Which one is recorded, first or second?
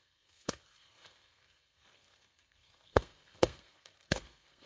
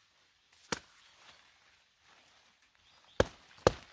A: second